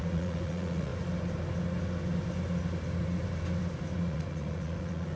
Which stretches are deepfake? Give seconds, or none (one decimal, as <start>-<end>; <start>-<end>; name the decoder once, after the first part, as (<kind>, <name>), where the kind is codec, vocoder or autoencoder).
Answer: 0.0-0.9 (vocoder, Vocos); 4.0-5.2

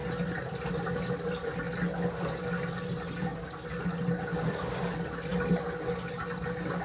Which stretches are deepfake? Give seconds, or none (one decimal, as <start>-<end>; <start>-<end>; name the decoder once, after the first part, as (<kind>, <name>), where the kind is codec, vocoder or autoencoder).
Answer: none

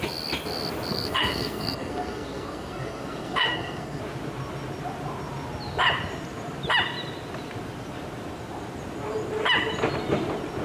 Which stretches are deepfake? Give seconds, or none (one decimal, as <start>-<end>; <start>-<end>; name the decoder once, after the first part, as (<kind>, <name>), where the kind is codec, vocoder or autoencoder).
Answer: 0.9-4.0 (codec, SNAC)